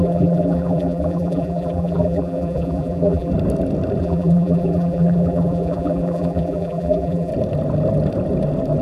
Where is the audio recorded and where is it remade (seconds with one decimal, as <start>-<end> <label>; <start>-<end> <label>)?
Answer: 0.0-3.3 remade; 3.3-4.0 recorded; 4.0-7.3 remade; 7.3-8.8 recorded